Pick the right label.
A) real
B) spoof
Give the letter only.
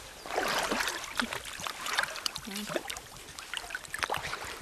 A